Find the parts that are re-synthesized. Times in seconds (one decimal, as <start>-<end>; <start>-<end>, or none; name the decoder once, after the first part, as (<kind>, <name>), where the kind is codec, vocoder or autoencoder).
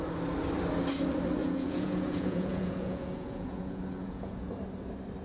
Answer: 1.4-4.5 (vocoder, Vocos)